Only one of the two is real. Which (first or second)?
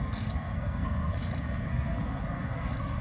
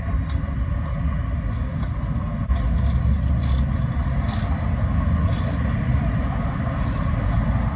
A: second